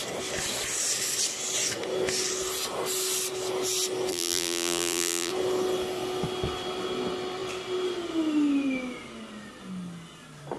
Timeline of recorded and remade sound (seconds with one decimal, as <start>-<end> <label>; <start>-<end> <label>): 0.0-4.1 recorded; 4.1-5.3 remade; 5.3-10.6 recorded